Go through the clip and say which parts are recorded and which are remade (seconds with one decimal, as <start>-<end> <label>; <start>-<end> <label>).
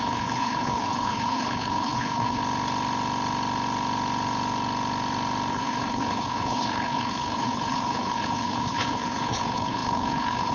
0.0-2.4 remade; 2.4-5.5 recorded; 5.5-10.5 remade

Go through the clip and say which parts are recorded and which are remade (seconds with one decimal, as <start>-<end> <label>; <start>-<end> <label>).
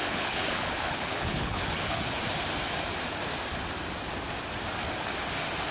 0.0-2.2 remade; 2.2-5.7 recorded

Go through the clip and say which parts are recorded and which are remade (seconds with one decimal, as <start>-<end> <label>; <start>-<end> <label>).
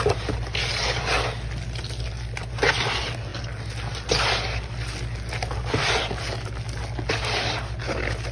0.0-8.3 recorded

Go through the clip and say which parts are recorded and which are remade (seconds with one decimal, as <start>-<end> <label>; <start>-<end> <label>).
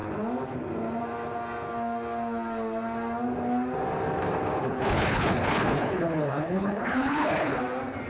0.0-4.6 recorded; 4.6-7.6 remade; 7.6-8.1 recorded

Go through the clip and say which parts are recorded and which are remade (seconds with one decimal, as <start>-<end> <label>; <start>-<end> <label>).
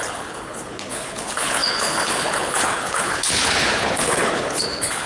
0.0-5.1 remade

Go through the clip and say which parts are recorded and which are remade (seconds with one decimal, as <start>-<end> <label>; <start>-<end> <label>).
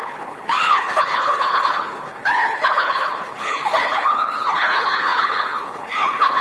0.0-6.4 remade